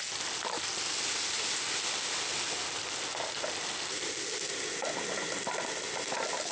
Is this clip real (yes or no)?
yes